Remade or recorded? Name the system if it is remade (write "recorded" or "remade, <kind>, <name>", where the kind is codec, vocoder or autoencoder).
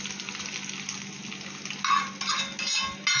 recorded